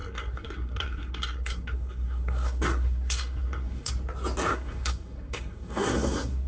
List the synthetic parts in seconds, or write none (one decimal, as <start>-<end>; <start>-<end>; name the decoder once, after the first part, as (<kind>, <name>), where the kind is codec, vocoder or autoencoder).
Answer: 0.0-3.9 (codec, SNAC); 4.5-6.5